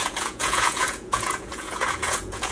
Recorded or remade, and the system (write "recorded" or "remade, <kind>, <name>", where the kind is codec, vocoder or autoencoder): remade, vocoder, Vocos